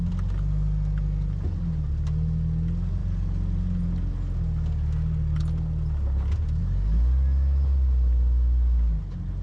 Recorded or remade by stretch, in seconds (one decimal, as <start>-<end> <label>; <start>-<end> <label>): 0.0-9.4 recorded